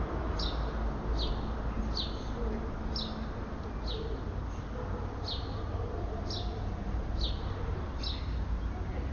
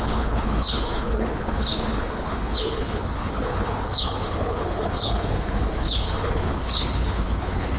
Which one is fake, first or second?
second